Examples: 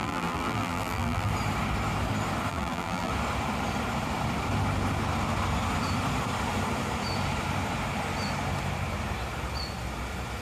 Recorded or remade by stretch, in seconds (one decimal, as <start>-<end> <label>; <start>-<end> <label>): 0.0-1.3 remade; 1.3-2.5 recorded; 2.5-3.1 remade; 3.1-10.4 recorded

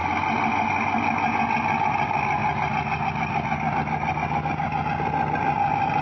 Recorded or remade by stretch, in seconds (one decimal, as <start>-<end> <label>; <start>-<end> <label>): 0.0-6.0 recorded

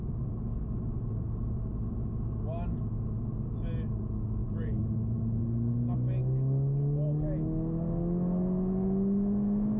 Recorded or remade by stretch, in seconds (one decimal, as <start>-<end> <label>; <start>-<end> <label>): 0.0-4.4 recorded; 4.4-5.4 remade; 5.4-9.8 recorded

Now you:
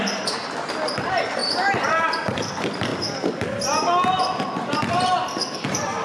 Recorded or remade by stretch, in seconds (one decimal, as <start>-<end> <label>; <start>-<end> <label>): 0.0-0.4 remade; 0.4-0.9 recorded; 0.9-2.9 remade; 2.9-4.1 recorded; 4.1-6.0 remade

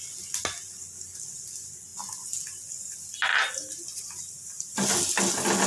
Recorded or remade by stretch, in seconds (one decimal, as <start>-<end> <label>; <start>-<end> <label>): 0.0-5.7 recorded

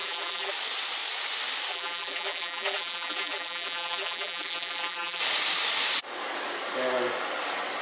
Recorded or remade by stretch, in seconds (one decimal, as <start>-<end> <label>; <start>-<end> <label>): 0.0-0.5 remade; 0.5-1.7 recorded; 1.7-5.2 remade; 5.2-7.8 recorded

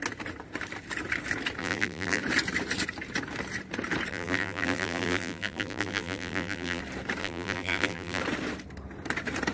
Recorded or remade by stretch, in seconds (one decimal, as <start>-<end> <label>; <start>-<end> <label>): 0.0-1.6 recorded; 1.6-2.2 remade; 2.2-4.1 recorded; 4.1-6.8 remade; 6.8-7.2 recorded; 7.2-8.2 remade; 8.2-9.5 recorded